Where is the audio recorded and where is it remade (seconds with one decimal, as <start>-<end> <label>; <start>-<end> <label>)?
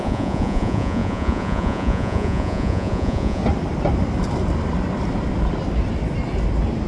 0.0-3.4 remade; 3.4-6.9 recorded